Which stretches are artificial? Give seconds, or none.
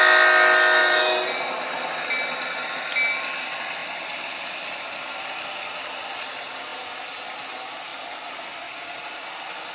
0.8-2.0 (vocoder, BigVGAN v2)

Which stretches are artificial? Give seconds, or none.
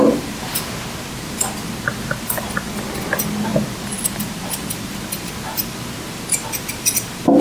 none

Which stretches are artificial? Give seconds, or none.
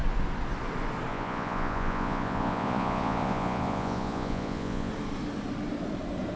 1.1-4.9 (vocoder, Vocos)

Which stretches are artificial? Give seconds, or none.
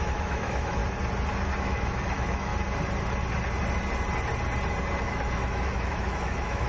0.0-0.8 (autoencoder, DAC-VAE); 1.6-2.5; 5.0-6.7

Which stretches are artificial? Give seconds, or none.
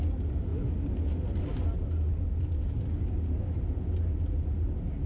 none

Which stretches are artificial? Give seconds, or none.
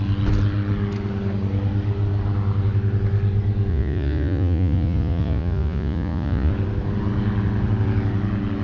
3.7-6.5 (vocoder, Vocos)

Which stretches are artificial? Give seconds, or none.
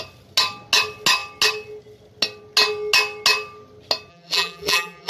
4.1-5.1 (vocoder, BigVGAN v2)